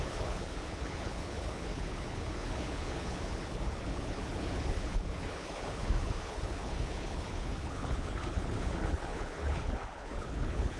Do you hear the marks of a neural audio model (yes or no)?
yes